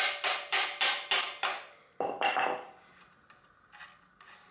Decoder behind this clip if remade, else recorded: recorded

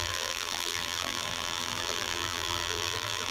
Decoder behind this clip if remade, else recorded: remade, vocoder, BigVGAN v2